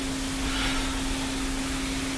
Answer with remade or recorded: recorded